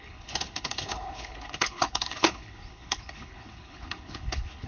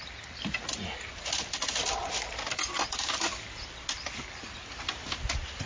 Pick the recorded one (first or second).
second